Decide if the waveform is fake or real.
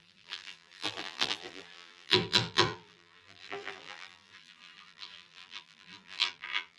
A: fake